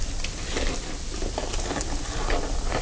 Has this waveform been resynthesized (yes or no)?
no